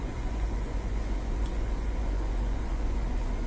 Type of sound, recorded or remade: remade